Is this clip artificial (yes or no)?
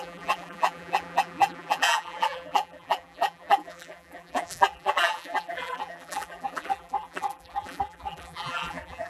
yes